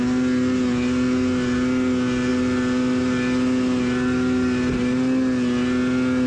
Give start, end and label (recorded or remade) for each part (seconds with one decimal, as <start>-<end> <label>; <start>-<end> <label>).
0.0-6.3 recorded